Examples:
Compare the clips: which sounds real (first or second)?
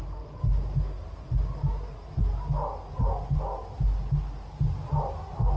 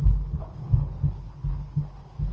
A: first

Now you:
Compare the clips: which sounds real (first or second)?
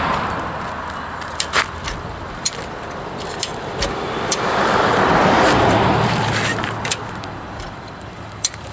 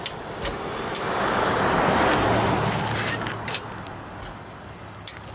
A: second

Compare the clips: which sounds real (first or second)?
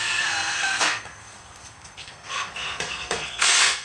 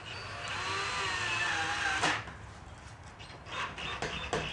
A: second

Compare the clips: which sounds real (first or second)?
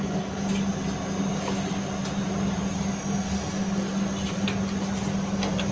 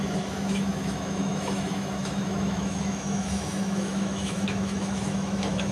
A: first